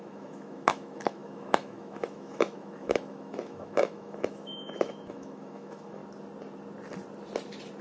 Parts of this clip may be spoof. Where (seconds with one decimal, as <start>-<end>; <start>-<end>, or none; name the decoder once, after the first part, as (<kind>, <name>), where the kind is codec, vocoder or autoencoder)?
0.0-6.0 (autoencoder, DAC-VAE)